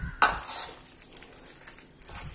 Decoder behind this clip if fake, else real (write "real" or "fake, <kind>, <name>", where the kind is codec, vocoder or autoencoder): real